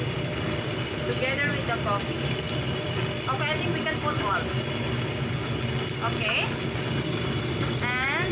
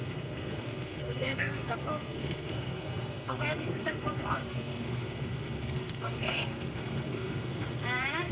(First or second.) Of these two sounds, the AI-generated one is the second